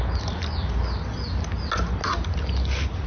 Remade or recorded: recorded